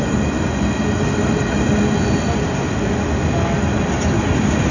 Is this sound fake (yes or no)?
no